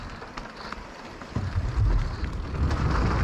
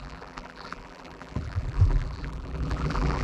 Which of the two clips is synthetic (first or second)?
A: second